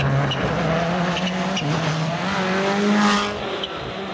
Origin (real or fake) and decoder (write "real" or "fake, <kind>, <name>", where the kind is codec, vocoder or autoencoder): real